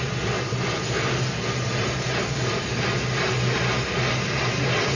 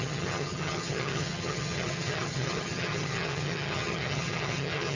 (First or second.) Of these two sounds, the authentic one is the first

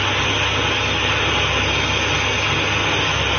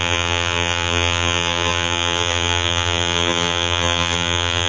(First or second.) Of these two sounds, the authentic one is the first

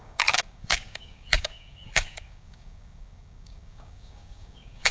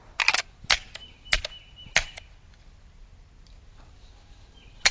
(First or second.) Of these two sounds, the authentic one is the second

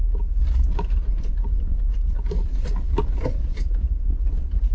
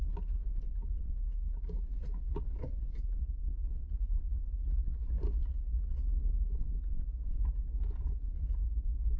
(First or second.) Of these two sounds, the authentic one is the second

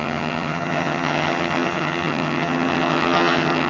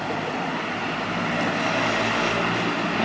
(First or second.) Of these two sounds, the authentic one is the second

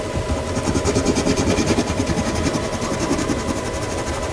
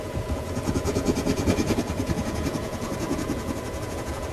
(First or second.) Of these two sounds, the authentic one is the first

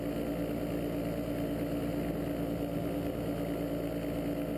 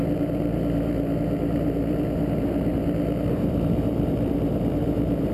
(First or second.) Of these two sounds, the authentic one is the first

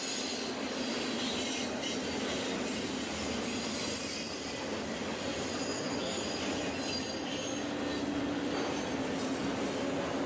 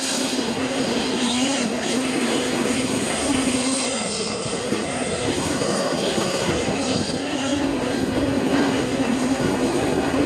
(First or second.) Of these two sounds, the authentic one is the first